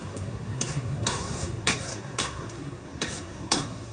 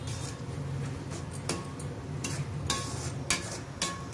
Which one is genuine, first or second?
second